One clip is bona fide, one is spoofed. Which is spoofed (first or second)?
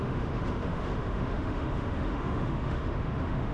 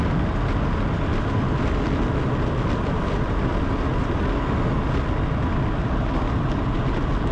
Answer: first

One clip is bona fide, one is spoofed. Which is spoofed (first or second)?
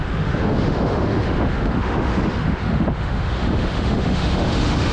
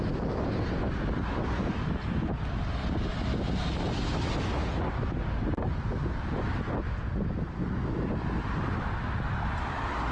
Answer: first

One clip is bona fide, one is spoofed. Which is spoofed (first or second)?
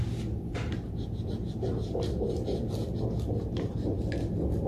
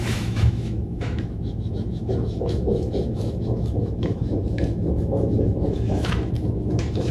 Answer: second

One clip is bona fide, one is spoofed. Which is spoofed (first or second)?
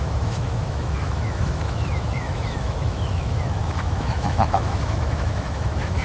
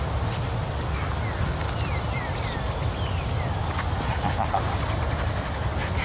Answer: first